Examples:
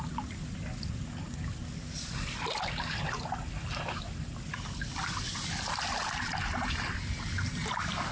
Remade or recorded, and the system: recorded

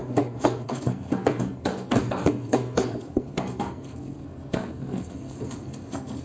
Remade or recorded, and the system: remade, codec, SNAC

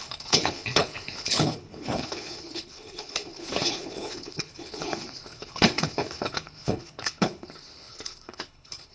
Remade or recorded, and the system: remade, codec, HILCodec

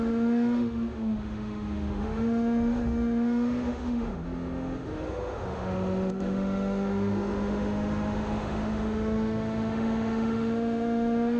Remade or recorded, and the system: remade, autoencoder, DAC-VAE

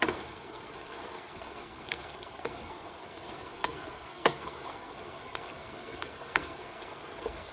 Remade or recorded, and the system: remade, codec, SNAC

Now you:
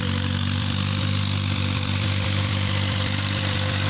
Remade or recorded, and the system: remade, vocoder, BigVGAN v2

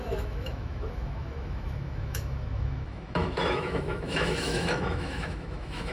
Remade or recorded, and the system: remade, autoencoder, DAC-VAE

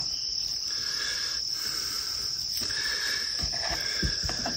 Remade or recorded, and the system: recorded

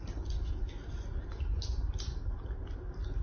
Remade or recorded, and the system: recorded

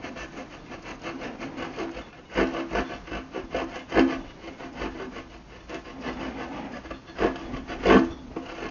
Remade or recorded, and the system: recorded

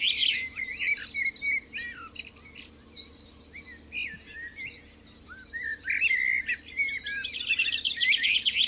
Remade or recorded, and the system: remade, vocoder, BigVGAN v2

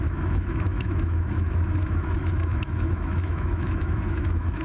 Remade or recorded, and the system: remade, autoencoder, DAC-VAE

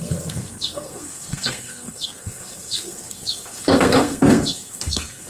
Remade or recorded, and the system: remade, codec, SNAC